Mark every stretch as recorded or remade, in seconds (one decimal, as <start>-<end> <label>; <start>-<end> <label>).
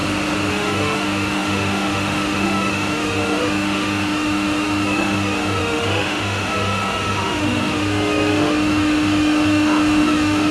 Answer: 0.0-0.5 recorded; 0.5-10.5 remade